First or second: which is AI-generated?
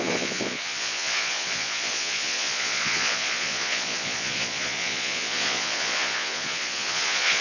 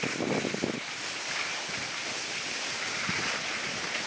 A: first